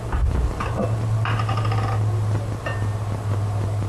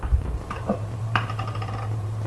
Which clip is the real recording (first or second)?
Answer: first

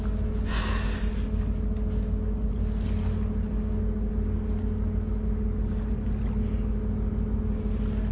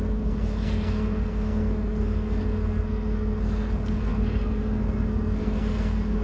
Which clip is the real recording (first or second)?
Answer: first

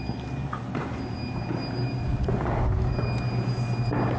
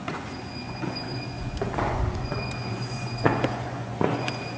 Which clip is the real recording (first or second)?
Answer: first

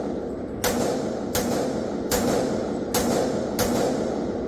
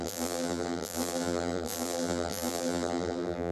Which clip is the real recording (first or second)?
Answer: first